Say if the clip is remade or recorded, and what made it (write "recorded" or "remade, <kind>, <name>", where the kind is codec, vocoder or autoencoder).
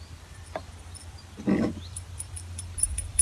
remade, vocoder, BigVGAN v2